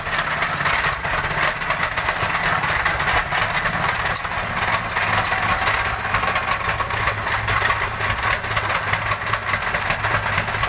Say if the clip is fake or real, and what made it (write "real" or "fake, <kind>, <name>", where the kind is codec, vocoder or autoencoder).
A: real